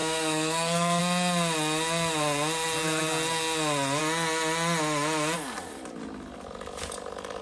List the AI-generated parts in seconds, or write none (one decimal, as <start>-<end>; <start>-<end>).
0.0-1.0